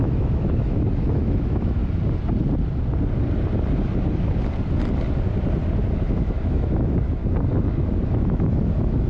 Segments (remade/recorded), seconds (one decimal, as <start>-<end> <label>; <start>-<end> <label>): 0.0-1.8 remade; 1.8-6.1 recorded; 6.1-7.2 remade; 7.2-8.0 recorded; 8.0-9.1 remade